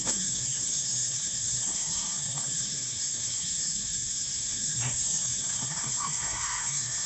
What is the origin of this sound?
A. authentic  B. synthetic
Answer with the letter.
B